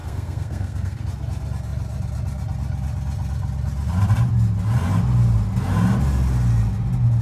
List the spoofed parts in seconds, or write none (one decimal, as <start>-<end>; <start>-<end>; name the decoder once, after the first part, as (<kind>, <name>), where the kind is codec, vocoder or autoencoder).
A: 0.0-1.0 (codec, SNAC)